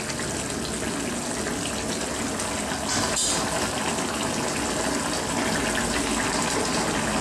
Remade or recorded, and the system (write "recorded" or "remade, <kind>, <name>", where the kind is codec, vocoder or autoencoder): recorded